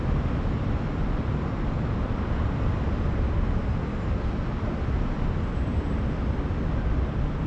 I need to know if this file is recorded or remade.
recorded